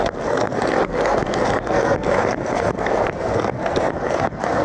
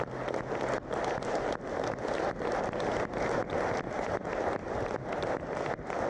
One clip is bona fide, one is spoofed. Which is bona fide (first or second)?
second